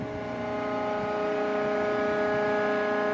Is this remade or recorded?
recorded